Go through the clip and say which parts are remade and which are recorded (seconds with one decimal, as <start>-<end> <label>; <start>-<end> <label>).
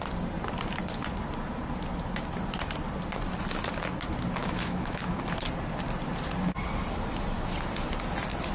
0.0-4.4 recorded; 4.4-5.2 remade; 5.2-8.5 recorded